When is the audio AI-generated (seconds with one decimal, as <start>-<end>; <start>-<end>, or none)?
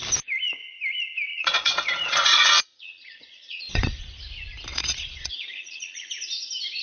1.3-4.0; 4.7-6.1